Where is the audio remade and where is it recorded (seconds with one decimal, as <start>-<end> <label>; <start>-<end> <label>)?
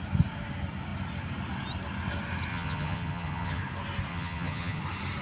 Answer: 0.0-2.5 recorded; 2.5-3.6 remade; 3.6-4.1 recorded; 4.1-4.8 remade; 4.8-5.2 recorded